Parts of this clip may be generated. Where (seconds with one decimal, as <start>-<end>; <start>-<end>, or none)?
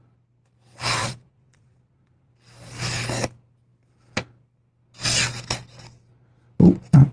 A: 1.0-2.3